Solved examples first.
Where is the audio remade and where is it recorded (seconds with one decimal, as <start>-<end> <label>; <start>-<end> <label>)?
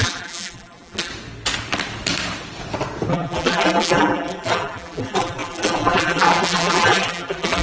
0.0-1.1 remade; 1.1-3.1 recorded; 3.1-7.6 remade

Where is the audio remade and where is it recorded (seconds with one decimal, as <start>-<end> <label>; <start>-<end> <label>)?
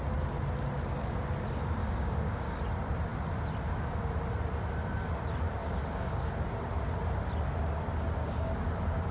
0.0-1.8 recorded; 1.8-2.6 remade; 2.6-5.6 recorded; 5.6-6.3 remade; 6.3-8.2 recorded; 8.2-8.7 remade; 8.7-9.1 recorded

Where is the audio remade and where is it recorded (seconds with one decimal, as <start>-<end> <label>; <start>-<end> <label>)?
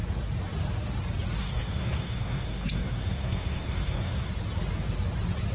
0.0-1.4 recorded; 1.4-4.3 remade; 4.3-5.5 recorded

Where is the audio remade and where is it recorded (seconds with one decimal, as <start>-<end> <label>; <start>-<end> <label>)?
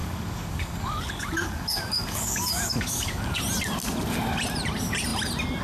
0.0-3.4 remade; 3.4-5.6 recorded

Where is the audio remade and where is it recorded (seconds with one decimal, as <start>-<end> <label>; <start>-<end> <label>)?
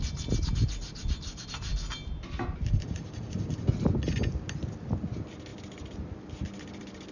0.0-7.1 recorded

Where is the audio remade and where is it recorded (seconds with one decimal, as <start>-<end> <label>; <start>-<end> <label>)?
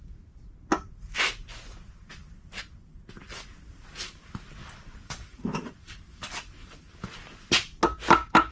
0.0-4.6 recorded; 4.6-6.3 remade; 6.3-8.5 recorded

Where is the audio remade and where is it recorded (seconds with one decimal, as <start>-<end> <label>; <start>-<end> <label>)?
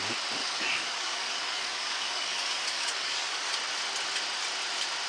0.0-0.4 recorded; 0.4-3.5 remade; 3.5-5.1 recorded